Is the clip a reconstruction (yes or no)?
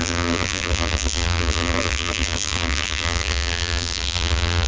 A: yes